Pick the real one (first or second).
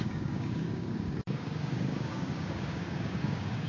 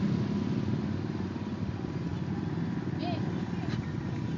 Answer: second